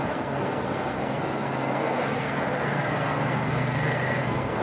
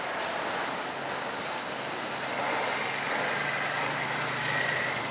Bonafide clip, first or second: second